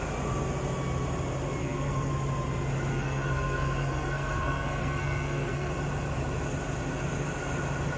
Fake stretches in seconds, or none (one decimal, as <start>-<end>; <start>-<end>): 1.6-2.1; 2.9-5.7